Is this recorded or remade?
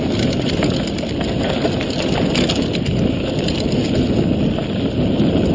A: recorded